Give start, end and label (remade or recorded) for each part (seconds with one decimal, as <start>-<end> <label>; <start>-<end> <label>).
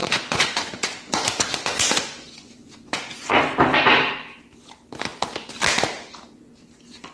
0.0-3.4 remade; 3.4-7.1 recorded